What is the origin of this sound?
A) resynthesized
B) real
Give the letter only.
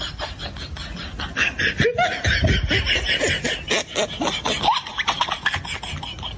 B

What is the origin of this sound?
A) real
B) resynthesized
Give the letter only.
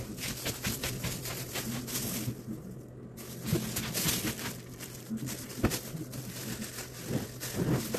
A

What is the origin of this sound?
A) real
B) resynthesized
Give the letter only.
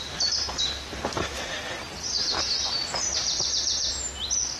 B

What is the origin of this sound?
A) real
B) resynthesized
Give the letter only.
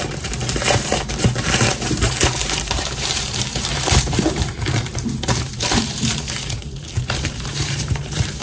B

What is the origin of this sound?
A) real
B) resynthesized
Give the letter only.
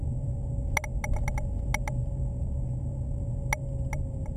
A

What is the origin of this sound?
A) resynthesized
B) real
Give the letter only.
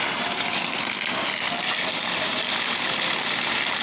A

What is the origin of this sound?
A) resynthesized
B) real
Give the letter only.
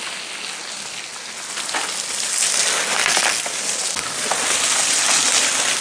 B